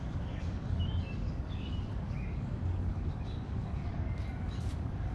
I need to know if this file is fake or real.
fake